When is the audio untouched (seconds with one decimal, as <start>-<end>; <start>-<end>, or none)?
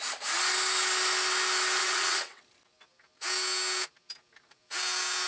0.0-1.8; 2.4-5.3